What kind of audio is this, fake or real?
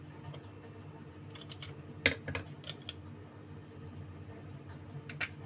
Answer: real